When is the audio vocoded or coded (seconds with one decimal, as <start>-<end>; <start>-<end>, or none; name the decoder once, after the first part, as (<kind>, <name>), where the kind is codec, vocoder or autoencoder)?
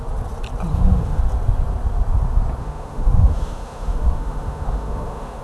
0.7-1.2 (autoencoder, DAC-VAE); 2.6-5.4